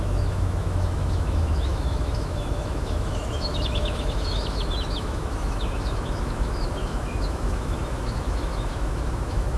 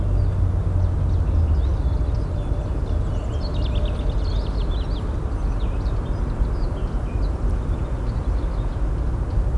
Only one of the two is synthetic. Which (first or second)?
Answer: first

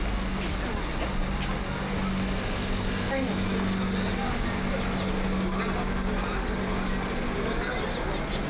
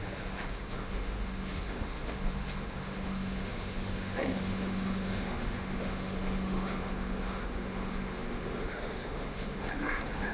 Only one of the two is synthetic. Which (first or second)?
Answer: second